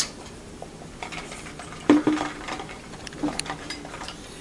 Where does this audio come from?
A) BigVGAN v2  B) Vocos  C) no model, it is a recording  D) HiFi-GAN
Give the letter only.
A